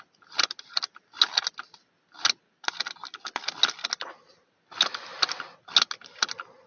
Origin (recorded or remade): recorded